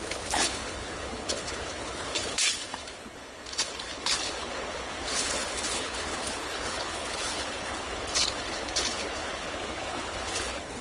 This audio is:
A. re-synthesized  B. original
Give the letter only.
A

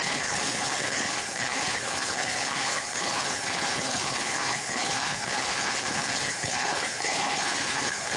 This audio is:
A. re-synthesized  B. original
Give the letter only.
A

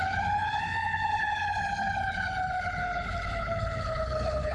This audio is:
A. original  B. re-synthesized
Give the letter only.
B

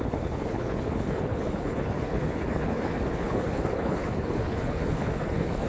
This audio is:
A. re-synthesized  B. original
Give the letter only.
A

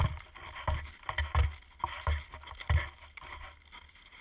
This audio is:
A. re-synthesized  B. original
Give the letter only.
B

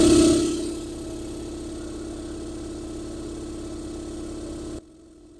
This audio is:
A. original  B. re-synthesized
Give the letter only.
A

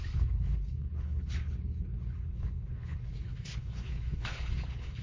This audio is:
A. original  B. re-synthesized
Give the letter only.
B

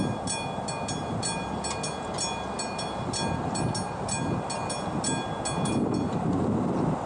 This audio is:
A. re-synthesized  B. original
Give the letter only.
B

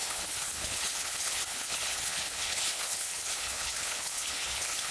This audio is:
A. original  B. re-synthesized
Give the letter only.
B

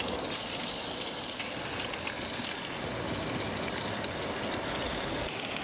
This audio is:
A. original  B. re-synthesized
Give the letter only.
A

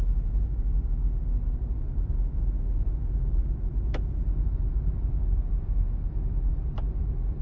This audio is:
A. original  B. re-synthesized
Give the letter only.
A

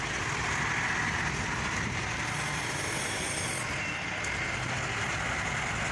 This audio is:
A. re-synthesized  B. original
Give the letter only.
B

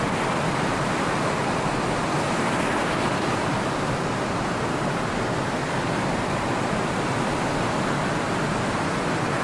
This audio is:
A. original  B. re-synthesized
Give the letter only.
A